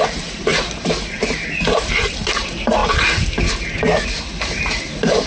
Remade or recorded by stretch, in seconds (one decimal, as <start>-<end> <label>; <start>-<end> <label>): 0.0-2.8 remade; 2.8-4.5 recorded; 4.5-5.3 remade